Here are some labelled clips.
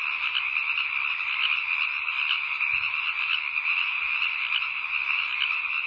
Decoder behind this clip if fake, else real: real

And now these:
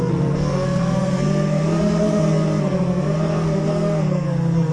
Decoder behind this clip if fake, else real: fake, codec, SNAC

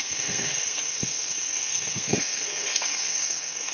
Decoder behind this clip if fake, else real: fake, codec, SNAC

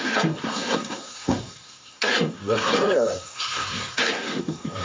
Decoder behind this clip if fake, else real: fake, codec, SNAC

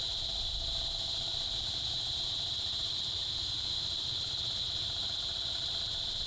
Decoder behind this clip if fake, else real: real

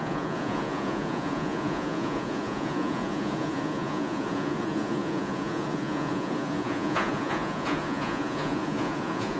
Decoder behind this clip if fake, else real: fake, vocoder, Vocos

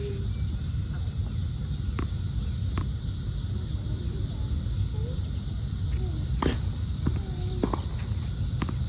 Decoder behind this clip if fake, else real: real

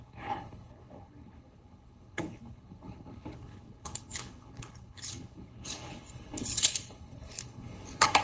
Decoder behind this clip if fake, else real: fake, codec, HILCodec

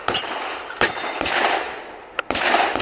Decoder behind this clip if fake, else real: real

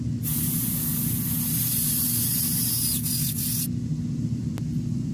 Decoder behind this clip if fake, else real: real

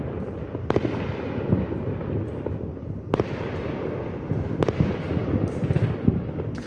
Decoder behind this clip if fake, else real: real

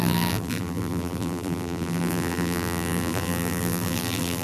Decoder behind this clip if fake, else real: fake, vocoder, BigVGAN v2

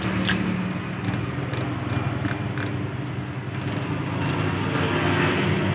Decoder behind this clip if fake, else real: real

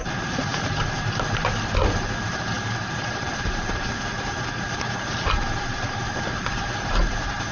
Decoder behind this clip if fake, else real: fake, vocoder, BigVGAN v2